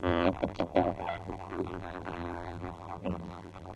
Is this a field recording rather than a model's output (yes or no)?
no